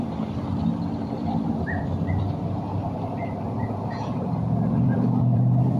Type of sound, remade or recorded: remade